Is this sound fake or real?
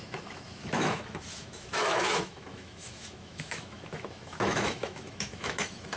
fake